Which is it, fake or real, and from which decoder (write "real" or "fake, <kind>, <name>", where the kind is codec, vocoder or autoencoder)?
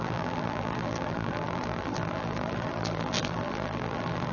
fake, vocoder, BigVGAN v2